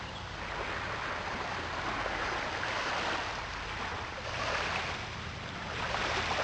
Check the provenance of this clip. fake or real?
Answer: real